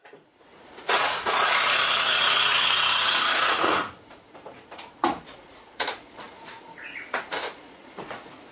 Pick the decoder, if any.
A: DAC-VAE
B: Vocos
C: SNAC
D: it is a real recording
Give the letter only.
B